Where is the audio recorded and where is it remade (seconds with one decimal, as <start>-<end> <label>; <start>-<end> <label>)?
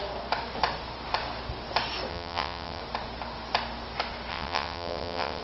0.0-2.1 recorded; 2.1-2.8 remade; 2.8-4.3 recorded; 4.3-5.4 remade